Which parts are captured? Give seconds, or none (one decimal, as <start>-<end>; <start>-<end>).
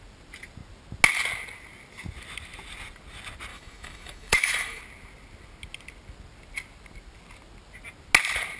0.0-3.5; 4.8-8.6